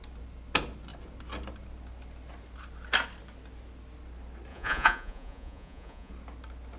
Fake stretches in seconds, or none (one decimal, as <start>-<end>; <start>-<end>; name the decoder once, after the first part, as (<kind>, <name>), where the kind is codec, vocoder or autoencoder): 4.5-6.1 (vocoder, Vocos)